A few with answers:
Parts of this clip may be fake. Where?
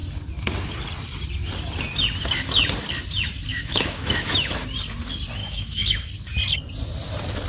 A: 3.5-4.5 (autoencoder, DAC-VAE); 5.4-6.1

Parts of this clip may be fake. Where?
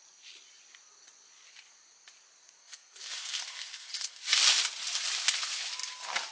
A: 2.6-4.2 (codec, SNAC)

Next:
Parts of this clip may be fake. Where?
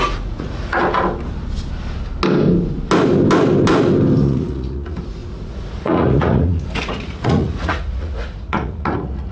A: 0.0-0.8 (vocoder, Vocos); 4.2-9.3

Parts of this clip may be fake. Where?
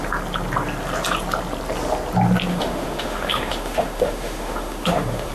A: 2.5-5.3 (autoencoder, DAC-VAE)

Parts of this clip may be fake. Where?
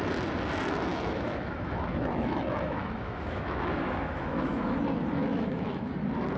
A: 0.9-4.7 (autoencoder, DAC-VAE); 5.2-5.9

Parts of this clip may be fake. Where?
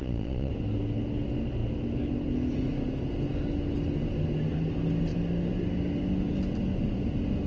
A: 0.0-0.5 (vocoder, Vocos)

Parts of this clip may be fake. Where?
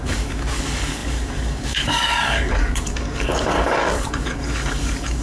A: 0.0-5.2 (codec, DAC)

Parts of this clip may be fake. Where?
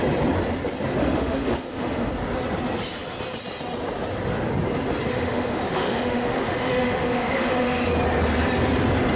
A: 1.0-2.1 (autoencoder, DAC-VAE); 5.1-7.9